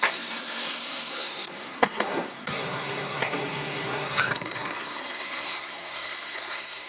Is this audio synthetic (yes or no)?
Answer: yes